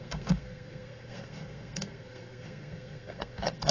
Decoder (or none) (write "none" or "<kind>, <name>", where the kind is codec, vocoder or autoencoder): codec, SNAC